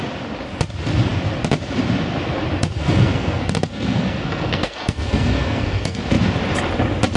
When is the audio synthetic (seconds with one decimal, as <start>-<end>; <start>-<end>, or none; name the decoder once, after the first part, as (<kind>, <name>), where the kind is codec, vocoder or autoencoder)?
2.6-6.0 (codec, SNAC)